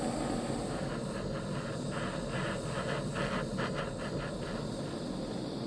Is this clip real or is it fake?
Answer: real